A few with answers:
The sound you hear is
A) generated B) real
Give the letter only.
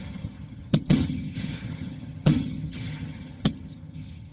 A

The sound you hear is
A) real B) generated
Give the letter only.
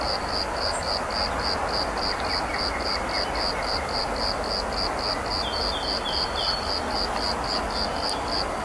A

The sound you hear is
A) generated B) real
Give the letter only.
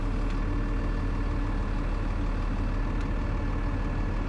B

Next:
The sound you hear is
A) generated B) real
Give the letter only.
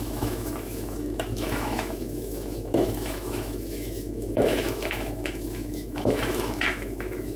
A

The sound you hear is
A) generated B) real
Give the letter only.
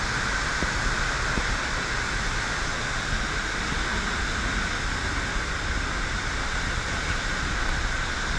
B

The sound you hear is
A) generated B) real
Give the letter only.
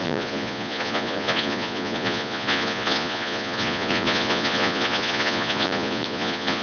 A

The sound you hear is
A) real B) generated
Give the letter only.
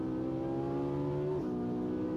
A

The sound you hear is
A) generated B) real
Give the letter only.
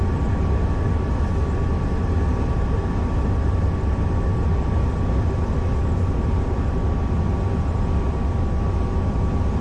B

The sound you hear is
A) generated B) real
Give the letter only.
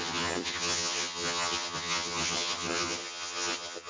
A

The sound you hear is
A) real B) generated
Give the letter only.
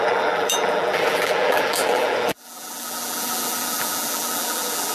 B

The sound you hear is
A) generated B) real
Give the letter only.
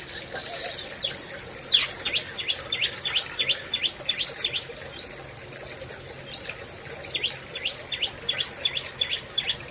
B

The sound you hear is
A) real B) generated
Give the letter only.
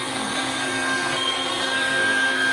B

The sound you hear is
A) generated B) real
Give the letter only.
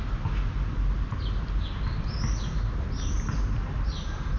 B